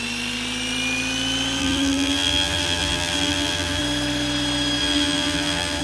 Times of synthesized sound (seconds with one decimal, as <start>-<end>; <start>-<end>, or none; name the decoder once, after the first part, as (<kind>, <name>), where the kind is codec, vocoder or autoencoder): 1.6-3.8 (vocoder, BigVGAN v2); 4.8-5.8